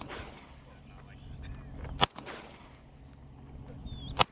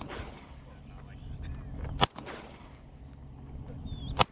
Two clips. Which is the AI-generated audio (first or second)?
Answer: second